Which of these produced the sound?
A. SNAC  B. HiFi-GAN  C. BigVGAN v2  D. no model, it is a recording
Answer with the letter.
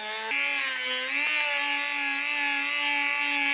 D